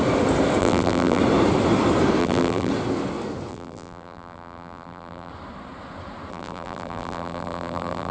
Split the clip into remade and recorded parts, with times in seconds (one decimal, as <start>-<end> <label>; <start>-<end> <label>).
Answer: 0.0-0.6 recorded; 0.6-1.2 remade; 1.2-2.2 recorded; 2.2-2.7 remade; 2.7-3.5 recorded; 3.5-5.3 remade; 5.3-6.3 recorded; 6.3-8.1 remade